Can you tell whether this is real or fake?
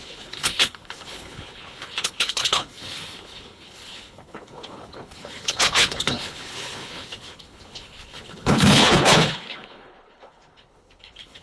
fake